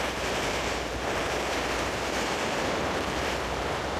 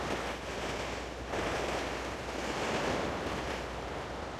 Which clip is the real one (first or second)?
second